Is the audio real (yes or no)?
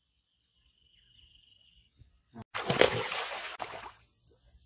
yes